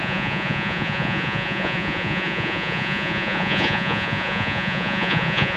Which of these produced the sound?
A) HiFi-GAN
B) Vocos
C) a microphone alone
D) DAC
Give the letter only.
B